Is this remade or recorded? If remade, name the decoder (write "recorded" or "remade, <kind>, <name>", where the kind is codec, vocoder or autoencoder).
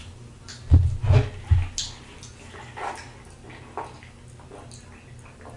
recorded